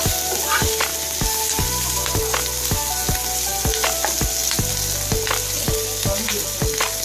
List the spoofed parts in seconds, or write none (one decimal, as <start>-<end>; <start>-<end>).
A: none